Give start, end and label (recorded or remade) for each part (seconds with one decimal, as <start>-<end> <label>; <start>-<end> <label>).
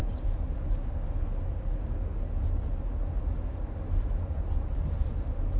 0.0-3.5 recorded; 3.5-5.6 remade